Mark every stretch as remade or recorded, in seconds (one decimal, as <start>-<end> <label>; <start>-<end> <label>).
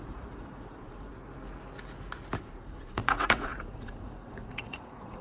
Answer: 0.0-1.1 remade; 1.1-2.4 recorded; 2.4-5.2 remade